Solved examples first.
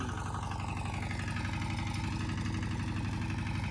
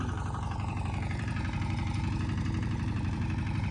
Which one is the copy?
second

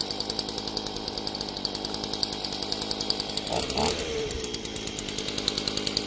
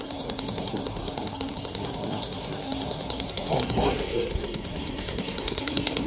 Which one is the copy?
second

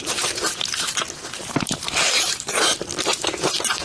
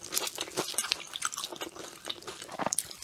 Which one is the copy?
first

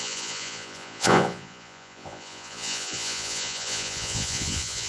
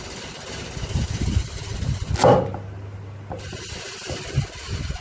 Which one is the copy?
first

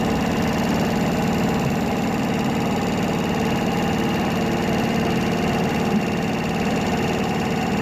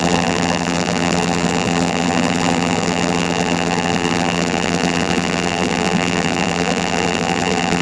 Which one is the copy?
second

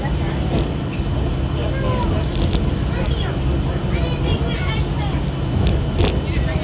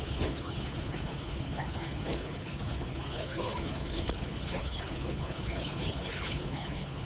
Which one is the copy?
second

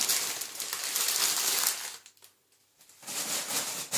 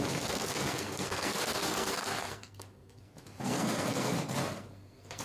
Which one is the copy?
second